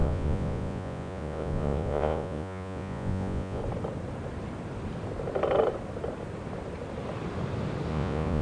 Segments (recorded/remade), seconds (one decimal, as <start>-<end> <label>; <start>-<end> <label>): 0.0-3.6 remade; 3.6-7.9 recorded; 7.9-8.4 remade